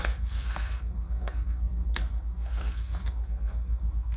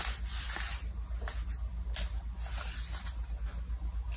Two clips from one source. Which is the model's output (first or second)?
first